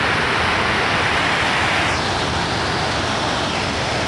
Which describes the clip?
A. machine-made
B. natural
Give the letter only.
B